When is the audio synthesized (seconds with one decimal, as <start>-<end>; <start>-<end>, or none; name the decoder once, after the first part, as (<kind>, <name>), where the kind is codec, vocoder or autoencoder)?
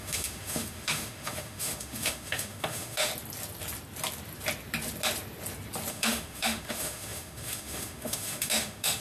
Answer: 0.0-3.1 (autoencoder, DAC-VAE); 5.9-9.0